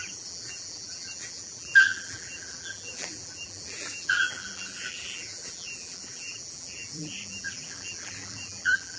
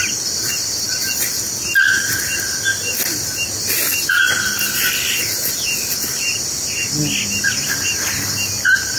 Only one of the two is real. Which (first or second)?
second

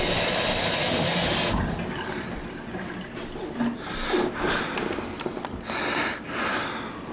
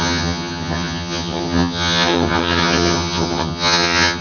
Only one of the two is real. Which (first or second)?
first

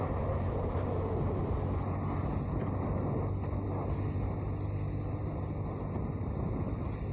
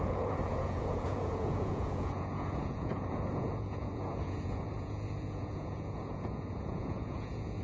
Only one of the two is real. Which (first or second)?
first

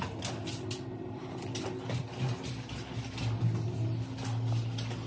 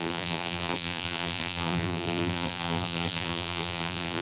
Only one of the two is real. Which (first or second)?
first